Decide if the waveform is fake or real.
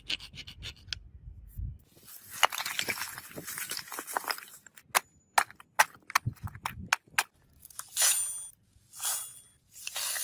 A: real